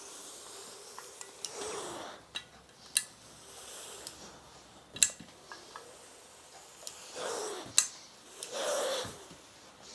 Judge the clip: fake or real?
real